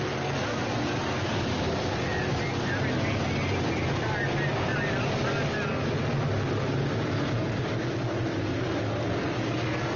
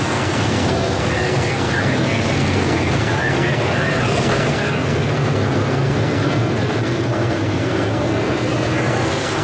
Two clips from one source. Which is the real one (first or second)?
first